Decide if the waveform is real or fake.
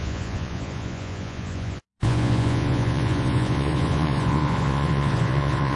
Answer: fake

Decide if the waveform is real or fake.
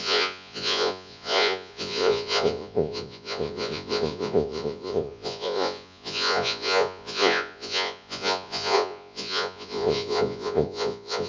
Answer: fake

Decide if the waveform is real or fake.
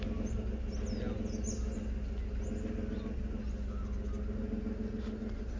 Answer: real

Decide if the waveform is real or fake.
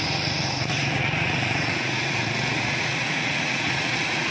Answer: fake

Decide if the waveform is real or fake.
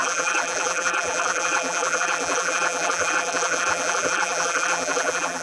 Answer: fake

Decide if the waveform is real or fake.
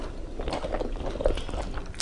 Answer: real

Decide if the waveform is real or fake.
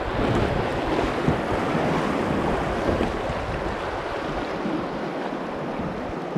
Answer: real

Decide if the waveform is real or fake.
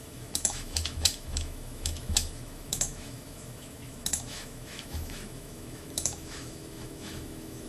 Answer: fake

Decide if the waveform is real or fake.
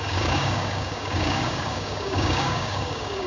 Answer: fake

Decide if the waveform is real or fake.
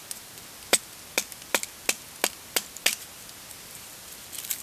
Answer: real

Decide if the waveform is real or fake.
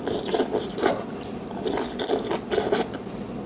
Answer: real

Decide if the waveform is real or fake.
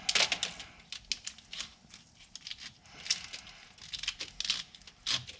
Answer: real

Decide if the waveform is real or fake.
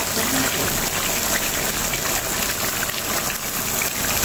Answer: real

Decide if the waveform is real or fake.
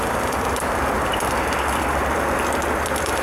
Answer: fake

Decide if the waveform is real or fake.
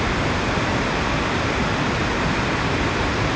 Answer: real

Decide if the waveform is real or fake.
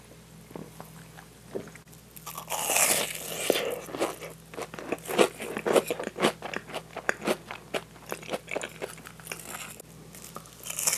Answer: real